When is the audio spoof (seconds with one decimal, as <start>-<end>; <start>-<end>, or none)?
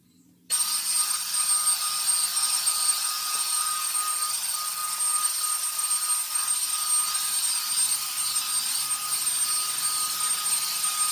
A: 2.4-4.1